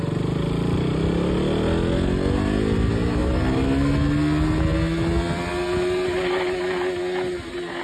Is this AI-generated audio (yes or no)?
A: no